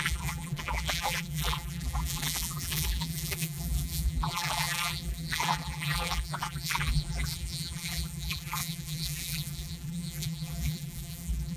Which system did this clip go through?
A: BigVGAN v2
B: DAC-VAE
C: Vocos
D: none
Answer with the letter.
A